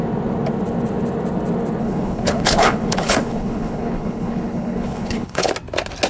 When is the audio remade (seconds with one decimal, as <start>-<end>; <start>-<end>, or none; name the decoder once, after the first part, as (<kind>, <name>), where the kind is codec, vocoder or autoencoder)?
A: 1.8-5.5 (codec, HILCodec)